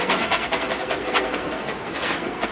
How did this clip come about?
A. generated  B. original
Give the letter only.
A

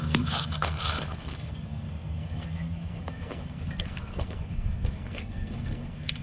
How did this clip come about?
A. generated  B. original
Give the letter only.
A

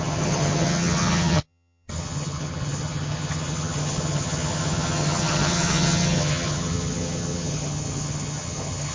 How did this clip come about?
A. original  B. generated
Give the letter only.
B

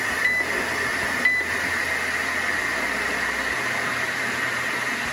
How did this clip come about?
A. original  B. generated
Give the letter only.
A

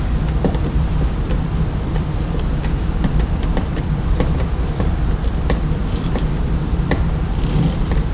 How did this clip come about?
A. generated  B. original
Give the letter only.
A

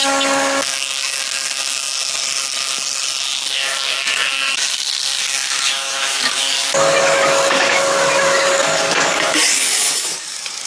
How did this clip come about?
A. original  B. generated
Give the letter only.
B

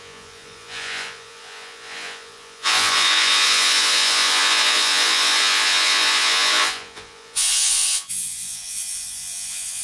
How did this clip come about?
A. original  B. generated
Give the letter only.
B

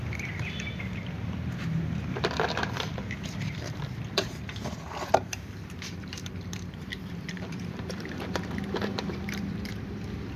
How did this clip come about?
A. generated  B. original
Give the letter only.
A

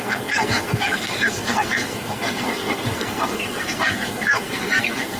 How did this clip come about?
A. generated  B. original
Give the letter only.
A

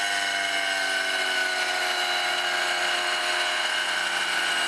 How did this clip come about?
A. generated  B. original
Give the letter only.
B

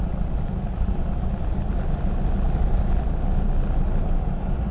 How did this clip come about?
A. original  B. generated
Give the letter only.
A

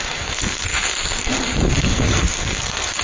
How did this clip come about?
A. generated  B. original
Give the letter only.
A